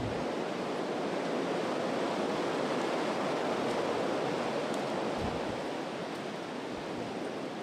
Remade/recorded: recorded